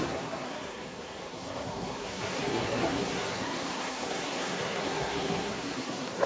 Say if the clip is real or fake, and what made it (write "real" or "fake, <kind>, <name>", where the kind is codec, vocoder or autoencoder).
fake, codec, SNAC